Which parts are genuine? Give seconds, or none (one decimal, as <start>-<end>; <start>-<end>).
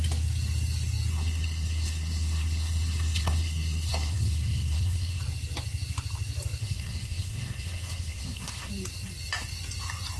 0.0-1.1; 5.2-6.6; 8.7-10.2